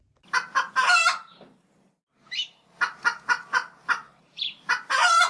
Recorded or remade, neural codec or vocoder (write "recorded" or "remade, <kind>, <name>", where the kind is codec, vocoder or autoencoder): recorded